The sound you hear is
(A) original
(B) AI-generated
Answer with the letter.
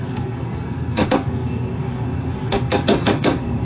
B